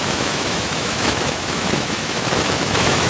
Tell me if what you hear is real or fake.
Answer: fake